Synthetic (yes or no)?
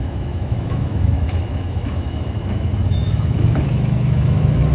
yes